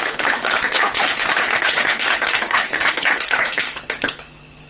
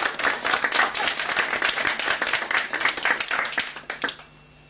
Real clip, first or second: second